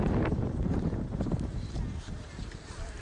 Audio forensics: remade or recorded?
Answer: remade